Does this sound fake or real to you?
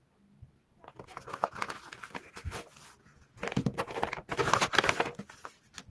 real